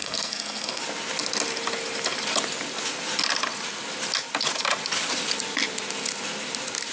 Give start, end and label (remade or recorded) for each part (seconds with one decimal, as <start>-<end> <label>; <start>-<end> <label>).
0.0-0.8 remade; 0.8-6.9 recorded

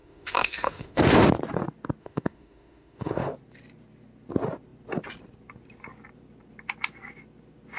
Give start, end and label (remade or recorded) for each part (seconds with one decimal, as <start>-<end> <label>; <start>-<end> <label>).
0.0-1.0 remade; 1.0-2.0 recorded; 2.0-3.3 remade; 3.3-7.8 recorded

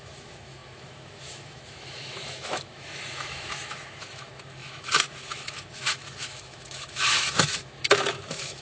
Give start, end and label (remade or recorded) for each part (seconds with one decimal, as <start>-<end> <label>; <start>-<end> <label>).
0.0-8.6 remade